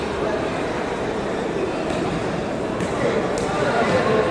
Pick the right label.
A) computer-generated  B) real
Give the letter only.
B